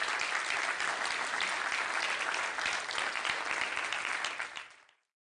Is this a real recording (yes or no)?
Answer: yes